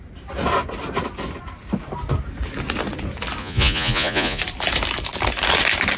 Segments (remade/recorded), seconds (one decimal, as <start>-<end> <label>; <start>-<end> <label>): 0.0-3.4 recorded; 3.4-4.4 remade; 4.4-6.0 recorded